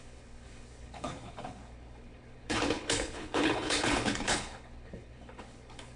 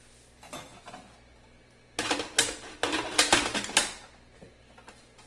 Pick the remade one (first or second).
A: first